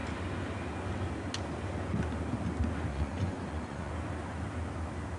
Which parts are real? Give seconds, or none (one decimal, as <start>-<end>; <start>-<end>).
0.0-2.9; 3.9-5.2